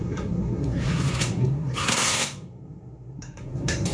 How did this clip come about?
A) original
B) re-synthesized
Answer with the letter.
B